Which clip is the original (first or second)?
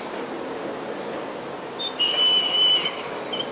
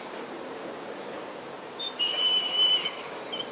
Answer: first